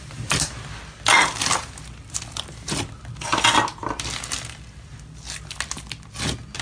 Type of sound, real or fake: real